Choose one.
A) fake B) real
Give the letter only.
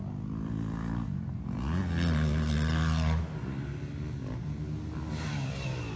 B